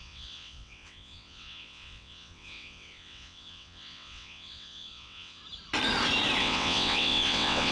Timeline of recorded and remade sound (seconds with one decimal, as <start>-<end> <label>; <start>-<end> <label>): 0.0-5.4 remade; 5.4-6.4 recorded; 6.4-7.7 remade